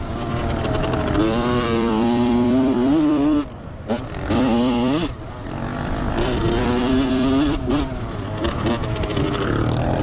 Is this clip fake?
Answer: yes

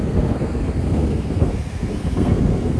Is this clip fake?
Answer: yes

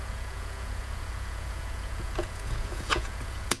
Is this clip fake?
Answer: yes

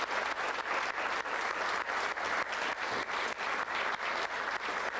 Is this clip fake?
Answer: no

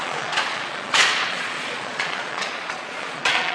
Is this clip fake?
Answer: yes